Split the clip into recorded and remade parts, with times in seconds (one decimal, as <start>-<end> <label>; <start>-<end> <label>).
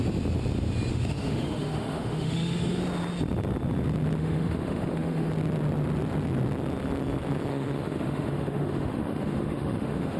0.0-0.9 recorded; 0.9-2.8 remade; 2.8-4.2 recorded; 4.2-5.3 remade; 5.3-7.5 recorded; 7.5-10.2 remade